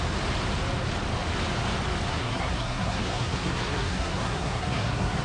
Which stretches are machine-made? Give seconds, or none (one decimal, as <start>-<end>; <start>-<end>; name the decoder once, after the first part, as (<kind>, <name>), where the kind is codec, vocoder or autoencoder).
2.1-5.2 (codec, SNAC)